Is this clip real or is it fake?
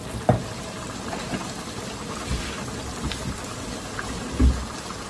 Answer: real